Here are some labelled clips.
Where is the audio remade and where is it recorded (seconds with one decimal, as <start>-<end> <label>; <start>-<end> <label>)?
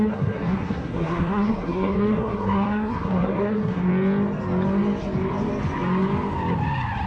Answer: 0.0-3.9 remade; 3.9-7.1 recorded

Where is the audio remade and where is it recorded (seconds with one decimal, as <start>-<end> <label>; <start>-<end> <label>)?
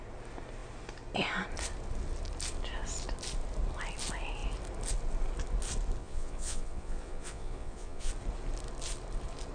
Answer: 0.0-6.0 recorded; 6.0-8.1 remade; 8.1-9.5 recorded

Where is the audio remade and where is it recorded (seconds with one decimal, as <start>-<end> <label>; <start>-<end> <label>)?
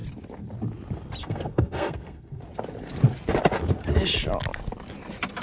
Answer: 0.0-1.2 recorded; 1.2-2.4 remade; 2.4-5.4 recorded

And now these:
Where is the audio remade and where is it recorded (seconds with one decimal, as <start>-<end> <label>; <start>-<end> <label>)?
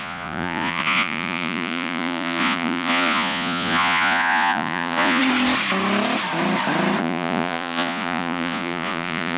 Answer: 0.0-5.2 remade; 5.2-7.0 recorded; 7.0-9.4 remade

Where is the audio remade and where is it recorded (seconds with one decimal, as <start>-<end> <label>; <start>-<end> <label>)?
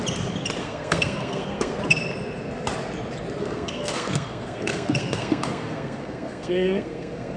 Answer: 0.0-0.6 recorded; 0.6-1.8 remade; 1.8-3.4 recorded; 3.4-7.4 remade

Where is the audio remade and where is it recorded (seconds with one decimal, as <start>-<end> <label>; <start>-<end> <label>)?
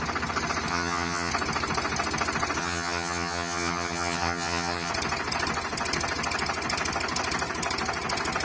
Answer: 0.0-0.7 recorded; 0.7-1.3 remade; 1.3-2.6 recorded; 2.6-4.9 remade; 4.9-8.4 recorded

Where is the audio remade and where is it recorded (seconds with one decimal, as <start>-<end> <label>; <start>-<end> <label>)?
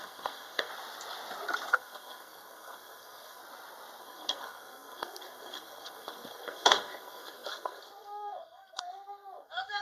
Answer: 0.0-0.7 remade; 0.7-1.7 recorded; 1.7-3.4 remade; 3.4-4.0 recorded; 4.0-9.8 remade